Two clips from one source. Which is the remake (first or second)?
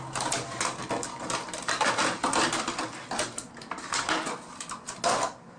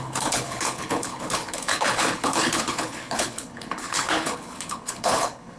second